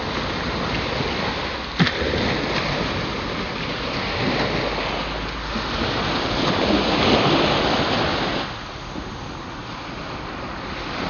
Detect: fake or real real